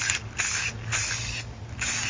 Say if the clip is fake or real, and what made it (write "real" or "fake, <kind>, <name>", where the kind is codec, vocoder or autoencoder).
real